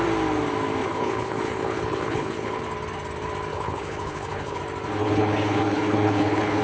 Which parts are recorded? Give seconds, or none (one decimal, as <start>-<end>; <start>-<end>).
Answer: 0.0-0.8; 2.6-3.5; 4.6-5.0